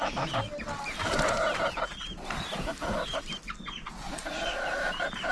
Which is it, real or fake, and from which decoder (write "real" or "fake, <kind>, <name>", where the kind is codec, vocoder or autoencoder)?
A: real